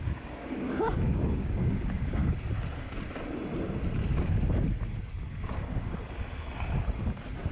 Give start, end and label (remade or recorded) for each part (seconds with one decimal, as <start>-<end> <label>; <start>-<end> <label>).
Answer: 0.0-2.2 remade; 2.2-5.3 recorded; 5.3-5.9 remade; 5.9-7.5 recorded